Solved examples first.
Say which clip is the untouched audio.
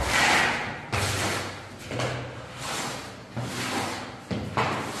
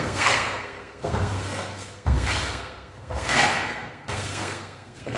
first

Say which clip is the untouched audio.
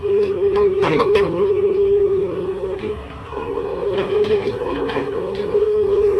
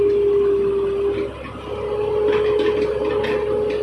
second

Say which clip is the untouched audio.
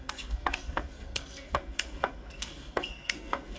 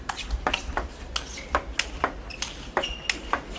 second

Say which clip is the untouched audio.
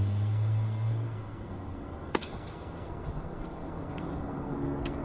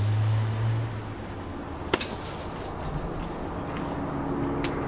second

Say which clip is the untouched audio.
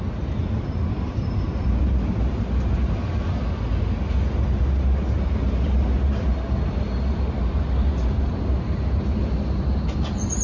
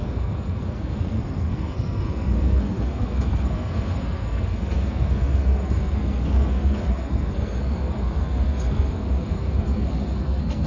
first